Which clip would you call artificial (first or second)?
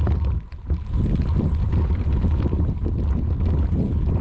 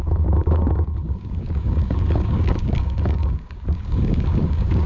second